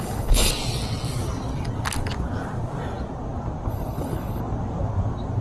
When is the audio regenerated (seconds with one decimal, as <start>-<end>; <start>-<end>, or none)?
0.0-0.5; 3.7-4.4